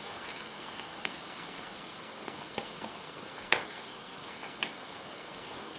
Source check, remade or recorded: remade